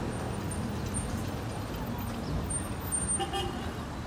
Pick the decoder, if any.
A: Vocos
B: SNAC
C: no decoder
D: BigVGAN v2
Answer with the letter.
C